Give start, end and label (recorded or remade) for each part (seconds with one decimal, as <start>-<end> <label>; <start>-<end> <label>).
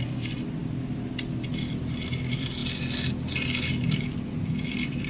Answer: 0.0-2.6 remade; 2.6-5.1 recorded